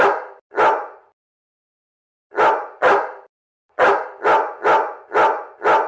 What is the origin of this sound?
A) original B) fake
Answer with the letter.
A